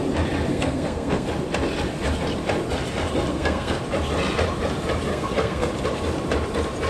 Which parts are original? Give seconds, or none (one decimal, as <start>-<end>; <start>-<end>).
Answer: 0.0-0.5; 1.3-3.3; 3.8-5.1; 5.7-6.9